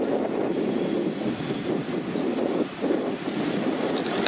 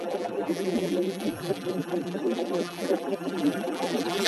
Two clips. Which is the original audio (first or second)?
first